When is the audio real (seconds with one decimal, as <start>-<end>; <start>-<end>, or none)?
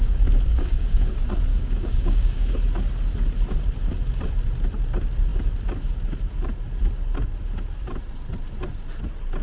0.0-0.5; 1.1-1.5; 2.5-9.4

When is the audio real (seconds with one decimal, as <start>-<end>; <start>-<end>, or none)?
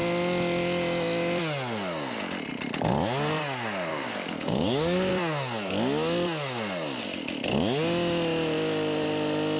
0.0-3.9; 5.1-9.6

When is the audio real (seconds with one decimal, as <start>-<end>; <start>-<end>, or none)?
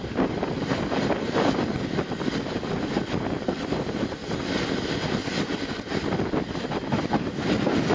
0.0-7.9